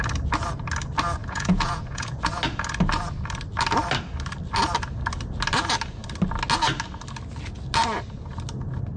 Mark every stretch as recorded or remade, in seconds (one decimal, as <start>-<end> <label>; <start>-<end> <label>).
0.0-1.2 recorded; 1.2-2.2 remade; 2.2-9.0 recorded